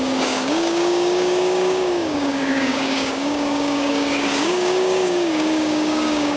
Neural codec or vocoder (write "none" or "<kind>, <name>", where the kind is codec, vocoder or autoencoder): codec, DAC